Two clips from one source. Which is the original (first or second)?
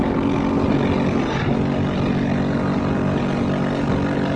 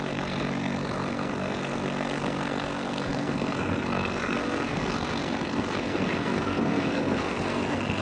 first